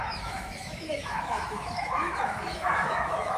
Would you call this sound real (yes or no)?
no